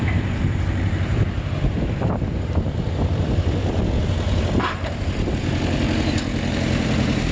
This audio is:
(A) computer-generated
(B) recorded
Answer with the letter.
A